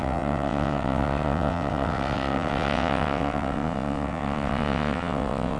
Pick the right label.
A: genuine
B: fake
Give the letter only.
B